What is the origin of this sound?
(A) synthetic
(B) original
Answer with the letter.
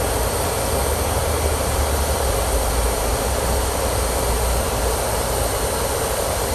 B